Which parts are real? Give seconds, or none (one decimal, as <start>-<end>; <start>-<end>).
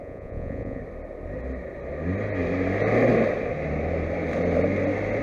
0.8-5.2